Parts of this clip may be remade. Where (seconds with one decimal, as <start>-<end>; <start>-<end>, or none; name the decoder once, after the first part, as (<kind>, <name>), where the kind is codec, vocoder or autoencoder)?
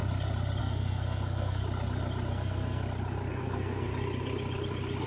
0.6-1.6 (codec, SNAC); 2.3-2.8; 3.3-3.9